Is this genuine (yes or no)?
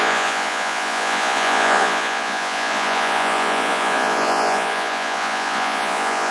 no